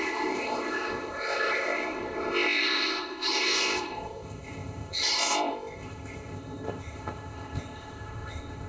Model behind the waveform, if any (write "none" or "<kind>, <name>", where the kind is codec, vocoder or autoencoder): codec, ZipCodec